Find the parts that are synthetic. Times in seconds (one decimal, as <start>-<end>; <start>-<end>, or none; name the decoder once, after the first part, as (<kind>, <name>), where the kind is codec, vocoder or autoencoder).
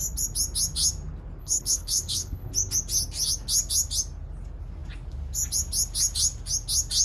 1.4-2.5 (codec, HILCodec)